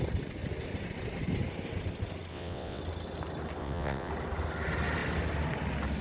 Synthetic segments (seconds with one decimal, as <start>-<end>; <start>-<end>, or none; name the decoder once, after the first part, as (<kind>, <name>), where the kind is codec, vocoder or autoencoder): 2.3-2.8 (vocoder, WaveNeXt); 3.6-4.1